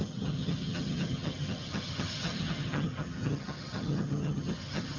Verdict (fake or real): fake